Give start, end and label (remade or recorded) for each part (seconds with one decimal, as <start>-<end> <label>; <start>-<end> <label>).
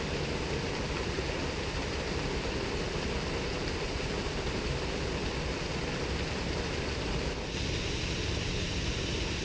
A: 0.0-9.4 recorded